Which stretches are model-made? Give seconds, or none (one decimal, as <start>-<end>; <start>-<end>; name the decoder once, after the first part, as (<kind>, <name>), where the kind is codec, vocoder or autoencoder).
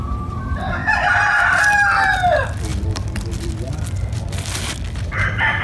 0.8-1.9 (vocoder, BigVGAN v2); 2.7-3.5